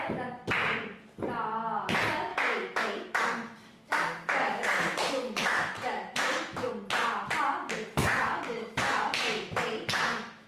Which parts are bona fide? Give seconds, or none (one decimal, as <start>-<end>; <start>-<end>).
0.0-2.3; 6.7-8.0